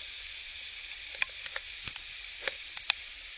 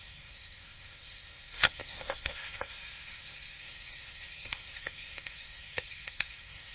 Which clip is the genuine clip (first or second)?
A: first